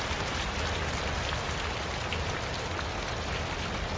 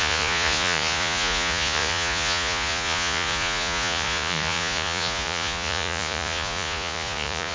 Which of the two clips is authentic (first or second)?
first